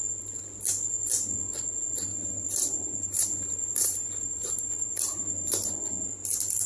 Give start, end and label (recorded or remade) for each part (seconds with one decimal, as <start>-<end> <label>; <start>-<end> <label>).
0.0-2.1 recorded; 2.1-5.7 remade; 5.7-6.7 recorded